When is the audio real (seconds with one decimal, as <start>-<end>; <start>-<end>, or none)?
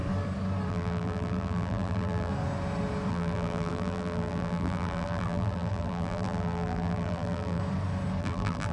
0.0-0.7; 2.3-3.1; 7.6-8.2